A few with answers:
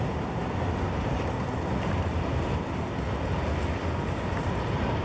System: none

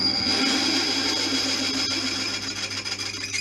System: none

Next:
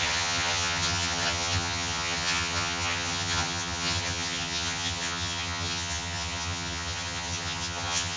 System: vocoder, HiFi-GAN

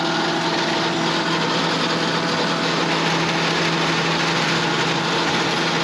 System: none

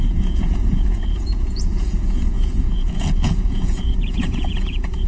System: vocoder, Vocos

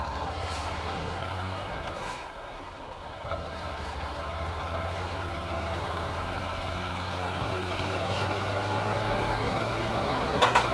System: codec, SNAC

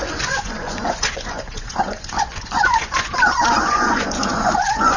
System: vocoder, Vocos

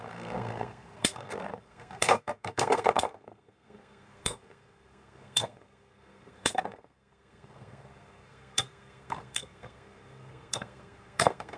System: codec, SNAC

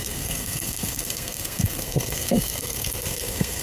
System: codec, SNAC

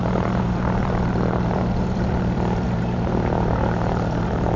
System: vocoder, BigVGAN v2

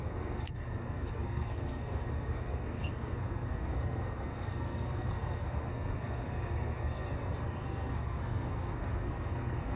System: codec, SNAC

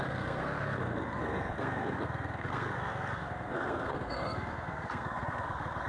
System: codec, SNAC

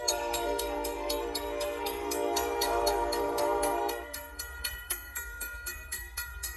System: codec, SNAC